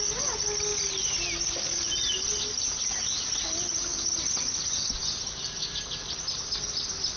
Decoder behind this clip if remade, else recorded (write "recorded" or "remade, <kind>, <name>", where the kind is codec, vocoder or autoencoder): recorded